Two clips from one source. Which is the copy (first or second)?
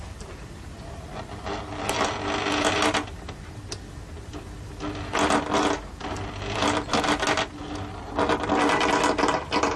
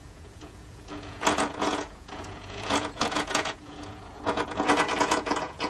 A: second